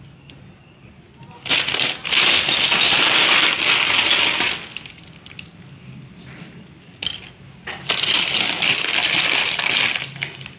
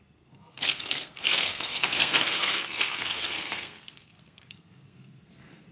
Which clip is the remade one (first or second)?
second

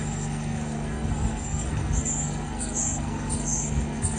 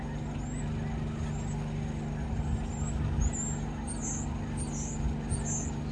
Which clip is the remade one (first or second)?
first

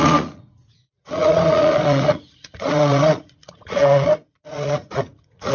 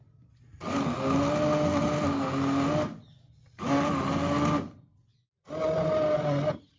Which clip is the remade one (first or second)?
first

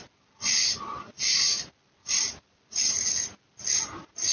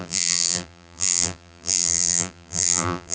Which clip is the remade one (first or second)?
second